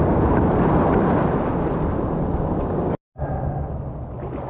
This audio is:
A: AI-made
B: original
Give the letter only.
B